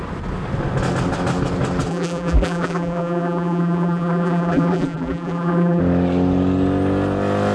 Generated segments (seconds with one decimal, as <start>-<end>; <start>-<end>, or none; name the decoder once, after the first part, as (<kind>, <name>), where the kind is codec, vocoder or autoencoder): 1.9-5.8 (vocoder, BigVGAN v2)